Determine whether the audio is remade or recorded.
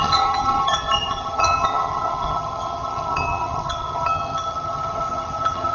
remade